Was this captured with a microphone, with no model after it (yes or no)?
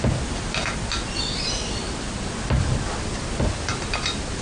yes